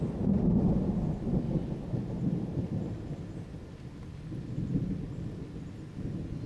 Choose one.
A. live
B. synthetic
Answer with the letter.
A